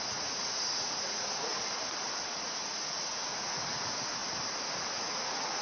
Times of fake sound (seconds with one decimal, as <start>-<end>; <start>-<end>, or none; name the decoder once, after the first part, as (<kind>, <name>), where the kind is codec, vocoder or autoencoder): 0.0-1.5 (vocoder, Vocos); 2.2-4.2; 4.9-5.6